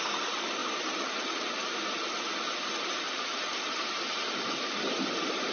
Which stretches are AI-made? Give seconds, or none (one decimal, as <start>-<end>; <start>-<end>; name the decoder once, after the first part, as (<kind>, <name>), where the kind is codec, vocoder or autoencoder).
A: 0.0-0.6 (vocoder, BigVGAN v2); 3.9-5.5